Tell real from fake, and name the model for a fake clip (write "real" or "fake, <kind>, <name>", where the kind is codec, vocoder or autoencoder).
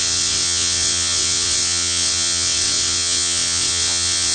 fake, vocoder, WaveNeXt